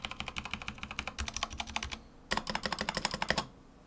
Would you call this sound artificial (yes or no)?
no